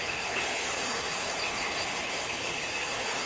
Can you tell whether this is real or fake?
fake